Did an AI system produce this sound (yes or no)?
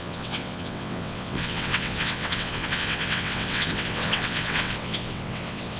yes